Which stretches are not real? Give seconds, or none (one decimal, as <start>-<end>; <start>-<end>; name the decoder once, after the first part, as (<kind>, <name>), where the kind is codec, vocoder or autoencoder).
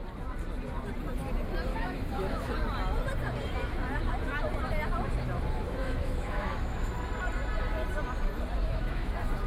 1.7-2.5 (autoencoder, DAC-VAE); 5.8-6.9; 8.6-9.1